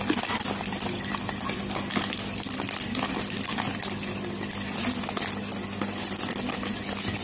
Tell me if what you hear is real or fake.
real